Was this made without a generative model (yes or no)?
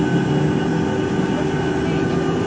yes